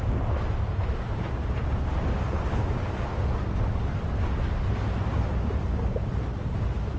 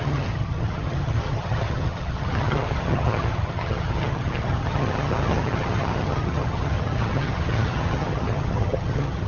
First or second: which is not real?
second